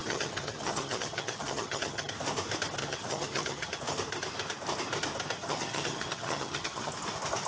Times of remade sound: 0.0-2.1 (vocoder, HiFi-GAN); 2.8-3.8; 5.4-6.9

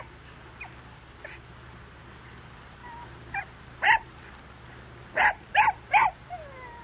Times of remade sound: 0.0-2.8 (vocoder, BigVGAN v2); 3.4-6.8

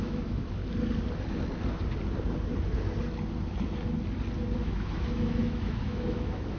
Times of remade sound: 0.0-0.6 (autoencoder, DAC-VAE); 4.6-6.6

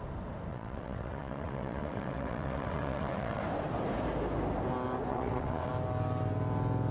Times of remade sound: 0.5-3.4 (vocoder, WaveNeXt); 5.1-5.7

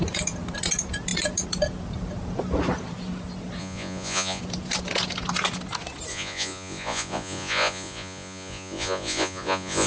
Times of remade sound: 3.6-4.4 (vocoder, Vocos); 6.1-9.9

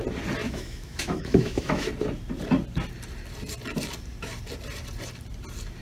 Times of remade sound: 0.4-1.9 (autoencoder, DAC-VAE)

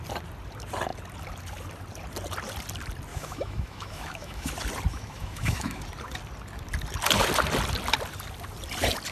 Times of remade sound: 3.1-4.5 (autoencoder, DAC-VAE); 4.9-5.8